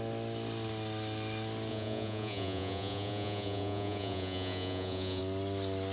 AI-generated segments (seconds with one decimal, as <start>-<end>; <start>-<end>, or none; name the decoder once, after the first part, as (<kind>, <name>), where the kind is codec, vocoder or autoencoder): 1.7-5.2 (vocoder, Vocos)